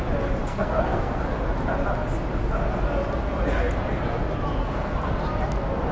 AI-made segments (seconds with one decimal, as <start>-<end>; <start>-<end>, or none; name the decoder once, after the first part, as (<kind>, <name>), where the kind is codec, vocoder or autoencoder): 0.4-1.2 (codec, SNAC); 4.6-5.1